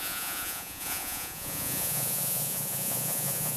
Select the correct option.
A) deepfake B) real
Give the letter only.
A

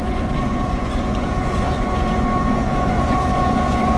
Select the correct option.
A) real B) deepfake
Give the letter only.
B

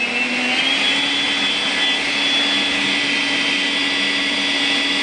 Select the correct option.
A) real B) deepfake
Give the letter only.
A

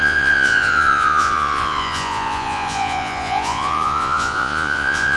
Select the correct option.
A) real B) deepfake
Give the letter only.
B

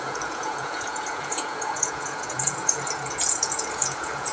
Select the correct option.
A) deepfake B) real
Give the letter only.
A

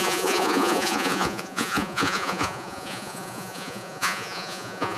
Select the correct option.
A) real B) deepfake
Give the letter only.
B